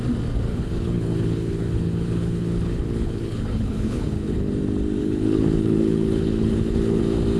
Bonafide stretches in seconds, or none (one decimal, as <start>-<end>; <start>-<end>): 0.0-0.5; 4.5-5.0; 7.0-7.4

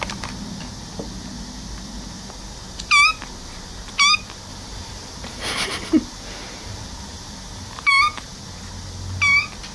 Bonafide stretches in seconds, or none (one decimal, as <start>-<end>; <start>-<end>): 0.0-4.5; 7.9-9.7